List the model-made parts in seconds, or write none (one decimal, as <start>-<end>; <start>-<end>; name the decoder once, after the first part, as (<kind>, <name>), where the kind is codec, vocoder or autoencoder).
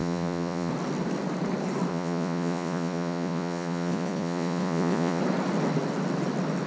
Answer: 0.0-0.7 (vocoder, Vocos); 1.9-5.2